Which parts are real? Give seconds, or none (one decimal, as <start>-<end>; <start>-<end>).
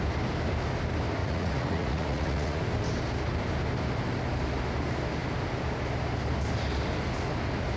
0.0-1.2; 2.6-7.8